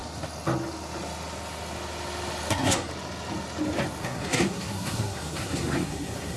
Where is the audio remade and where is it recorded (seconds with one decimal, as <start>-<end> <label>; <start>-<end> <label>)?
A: 0.0-2.5 recorded; 2.5-2.9 remade; 2.9-4.0 recorded; 4.0-6.4 remade